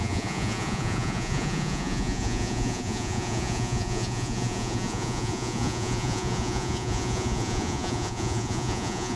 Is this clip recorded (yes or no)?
no